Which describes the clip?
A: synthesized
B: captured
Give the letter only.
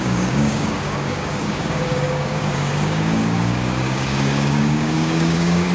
A